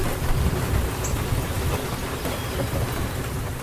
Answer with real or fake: real